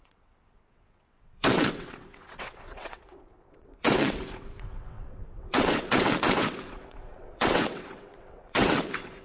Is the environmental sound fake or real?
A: fake